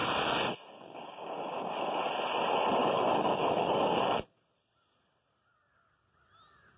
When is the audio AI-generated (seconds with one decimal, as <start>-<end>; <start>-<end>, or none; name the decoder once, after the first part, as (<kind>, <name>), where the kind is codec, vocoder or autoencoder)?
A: 0.0-2.0 (codec, DAC); 2.8-4.2